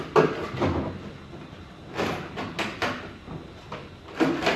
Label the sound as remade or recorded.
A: recorded